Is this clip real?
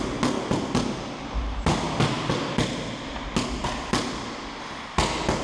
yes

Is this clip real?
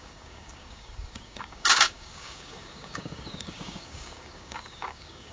no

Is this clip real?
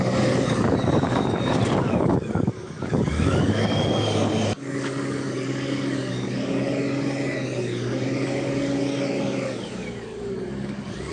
no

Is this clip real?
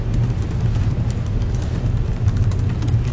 yes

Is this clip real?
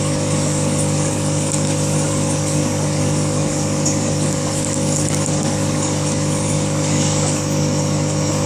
no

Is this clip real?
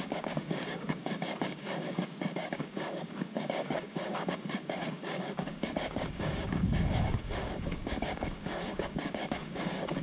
no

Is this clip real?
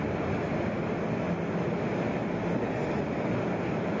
yes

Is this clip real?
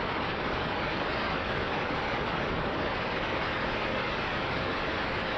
no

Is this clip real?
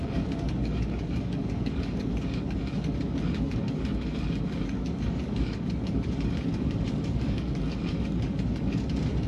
no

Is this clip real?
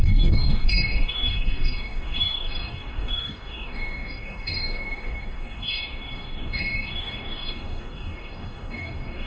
no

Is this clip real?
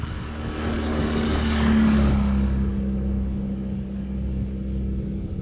no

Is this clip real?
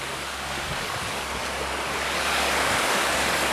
no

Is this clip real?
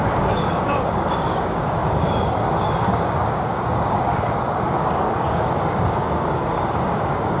no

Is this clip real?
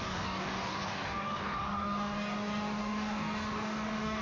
no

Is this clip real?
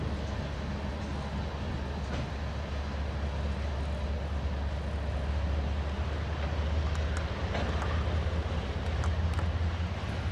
yes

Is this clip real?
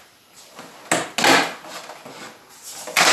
yes